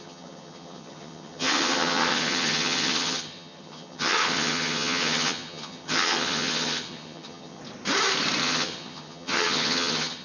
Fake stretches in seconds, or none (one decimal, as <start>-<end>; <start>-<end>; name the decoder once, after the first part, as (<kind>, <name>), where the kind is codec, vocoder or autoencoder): 0.0-7.6 (vocoder, HiFi-GAN); 8.4-10.2